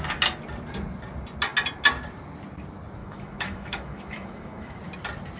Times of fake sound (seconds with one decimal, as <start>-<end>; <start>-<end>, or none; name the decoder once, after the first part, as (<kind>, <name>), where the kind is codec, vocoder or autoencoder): 3.0-4.8 (autoencoder, DAC-VAE)